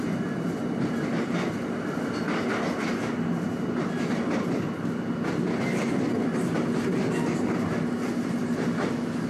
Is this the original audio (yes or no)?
yes